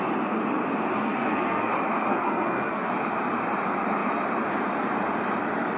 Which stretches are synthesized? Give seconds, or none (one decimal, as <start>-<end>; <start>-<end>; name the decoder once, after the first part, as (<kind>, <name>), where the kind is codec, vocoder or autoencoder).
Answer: 0.9-1.7 (codec, SNAC); 2.1-2.9